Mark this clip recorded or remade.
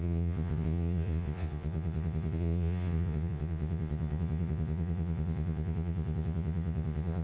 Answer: remade